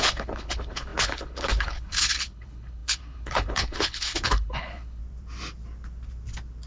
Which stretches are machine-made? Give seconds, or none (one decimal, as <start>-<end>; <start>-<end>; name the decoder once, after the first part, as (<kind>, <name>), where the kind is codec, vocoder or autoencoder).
0.0-5.0 (codec, HILCodec)